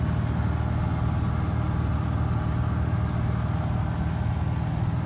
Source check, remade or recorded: recorded